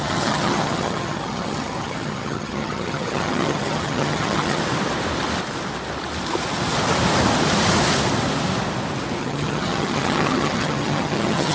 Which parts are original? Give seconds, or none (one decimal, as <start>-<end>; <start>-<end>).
4.6-9.2